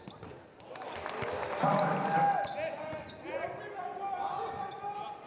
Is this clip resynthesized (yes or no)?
no